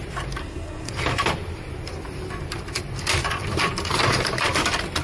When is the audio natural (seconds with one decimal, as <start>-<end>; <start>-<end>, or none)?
0.0-0.4; 0.9-5.0